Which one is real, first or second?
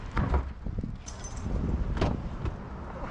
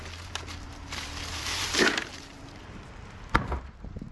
first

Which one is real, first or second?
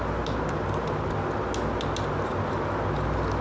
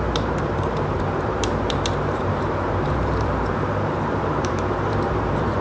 first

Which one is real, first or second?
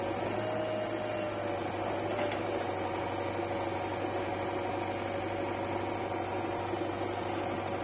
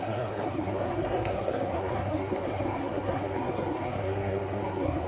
first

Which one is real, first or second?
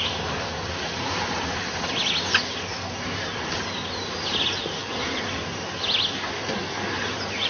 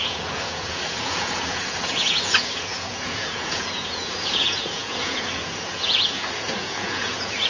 first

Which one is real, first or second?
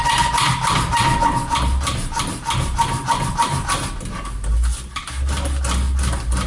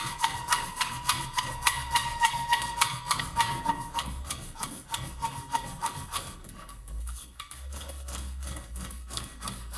first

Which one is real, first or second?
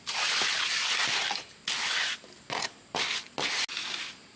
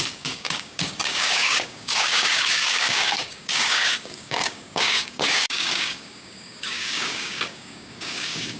first